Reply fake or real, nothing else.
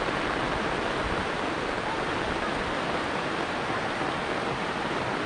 real